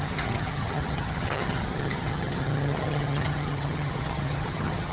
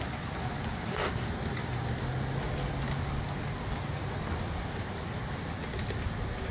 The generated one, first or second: first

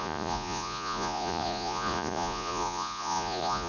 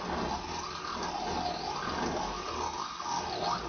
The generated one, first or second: first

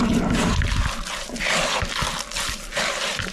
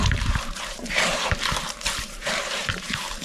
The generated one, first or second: second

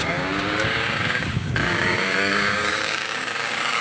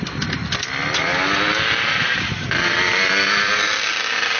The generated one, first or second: first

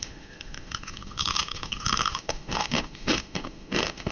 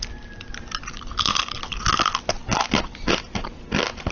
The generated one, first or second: first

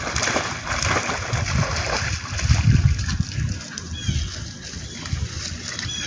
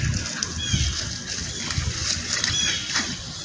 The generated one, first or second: first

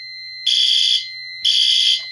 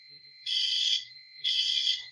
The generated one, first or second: second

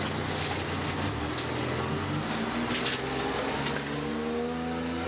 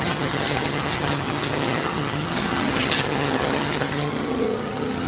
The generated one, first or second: second